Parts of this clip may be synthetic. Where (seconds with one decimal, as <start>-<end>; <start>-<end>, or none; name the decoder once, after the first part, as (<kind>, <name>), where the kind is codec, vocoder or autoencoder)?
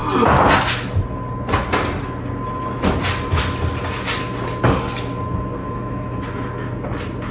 5.6-6.2 (autoencoder, DAC-VAE)